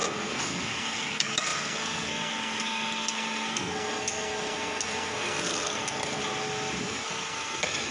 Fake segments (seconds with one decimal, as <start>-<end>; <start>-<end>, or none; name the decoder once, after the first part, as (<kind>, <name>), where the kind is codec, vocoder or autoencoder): 0.0-6.2 (codec, SNAC); 6.8-7.9